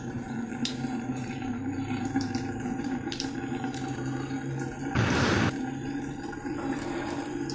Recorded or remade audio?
remade